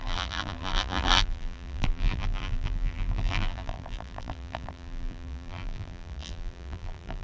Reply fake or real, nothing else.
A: fake